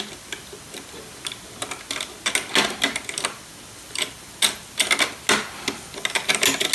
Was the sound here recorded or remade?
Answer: recorded